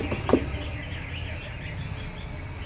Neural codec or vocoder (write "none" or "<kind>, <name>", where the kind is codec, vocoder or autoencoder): none